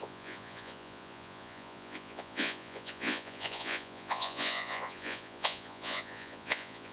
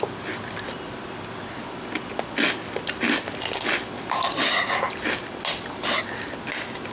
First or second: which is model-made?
first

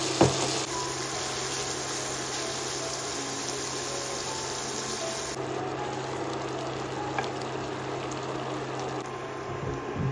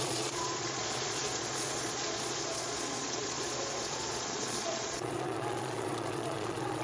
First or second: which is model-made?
second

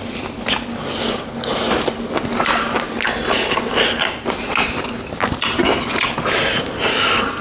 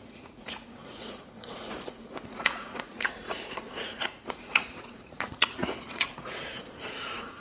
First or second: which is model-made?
second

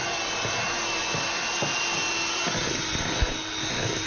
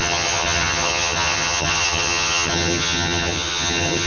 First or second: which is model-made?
second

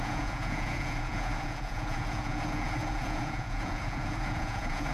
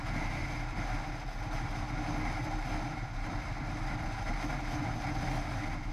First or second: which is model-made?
first